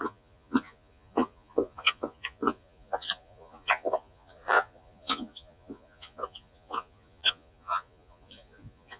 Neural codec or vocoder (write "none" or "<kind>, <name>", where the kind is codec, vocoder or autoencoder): vocoder, Vocos